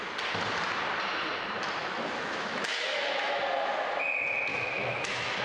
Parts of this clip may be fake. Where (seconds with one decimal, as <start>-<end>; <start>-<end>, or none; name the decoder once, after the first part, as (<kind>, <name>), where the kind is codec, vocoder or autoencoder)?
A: 1.8-3.4 (autoencoder, DAC-VAE); 4.5-5.4